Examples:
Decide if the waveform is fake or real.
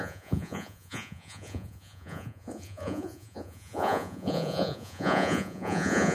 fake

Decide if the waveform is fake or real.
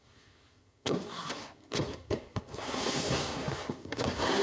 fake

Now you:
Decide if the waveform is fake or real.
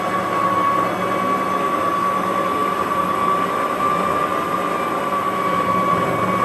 real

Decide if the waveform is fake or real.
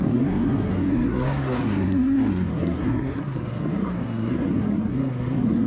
fake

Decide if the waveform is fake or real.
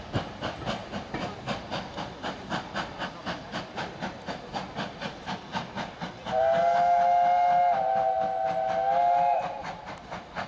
real